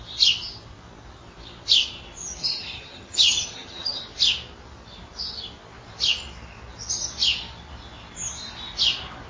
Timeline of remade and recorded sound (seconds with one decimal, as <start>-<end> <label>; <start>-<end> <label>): 0.0-2.4 recorded; 2.4-4.0 remade; 4.0-9.3 recorded